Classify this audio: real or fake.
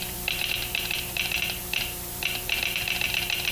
fake